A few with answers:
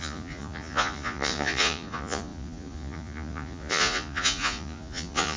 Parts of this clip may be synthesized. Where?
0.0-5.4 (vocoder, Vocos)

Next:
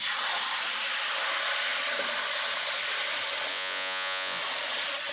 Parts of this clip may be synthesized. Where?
3.5-4.4 (vocoder, Vocos)

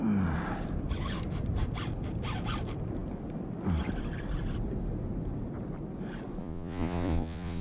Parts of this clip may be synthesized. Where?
6.4-7.6 (vocoder, Vocos)

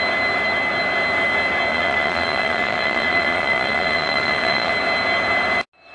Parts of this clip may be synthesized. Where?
1.7-4.7 (vocoder, Vocos)